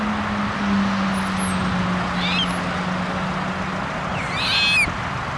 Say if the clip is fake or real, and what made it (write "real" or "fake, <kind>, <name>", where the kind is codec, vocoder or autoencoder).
real